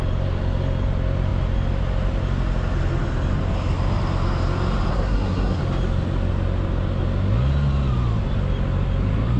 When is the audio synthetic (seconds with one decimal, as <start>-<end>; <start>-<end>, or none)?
4.9-5.6